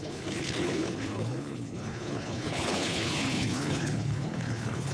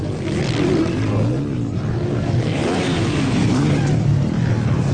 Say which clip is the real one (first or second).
second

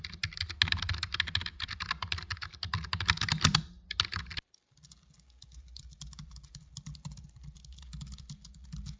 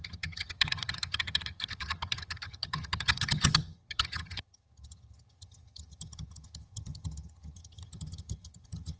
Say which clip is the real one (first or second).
first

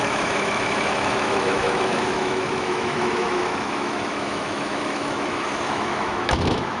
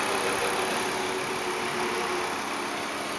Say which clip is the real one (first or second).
second